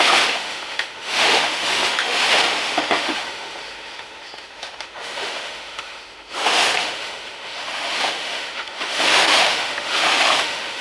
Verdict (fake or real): fake